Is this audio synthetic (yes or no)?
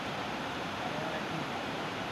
yes